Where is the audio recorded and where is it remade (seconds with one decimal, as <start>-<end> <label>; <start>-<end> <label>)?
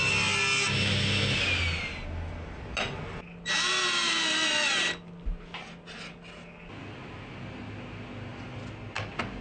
0.0-9.4 recorded